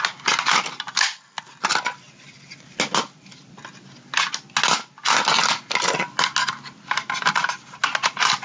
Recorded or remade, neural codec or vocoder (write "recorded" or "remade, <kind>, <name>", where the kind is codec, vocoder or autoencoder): recorded